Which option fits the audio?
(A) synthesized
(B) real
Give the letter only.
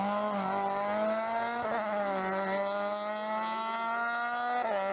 B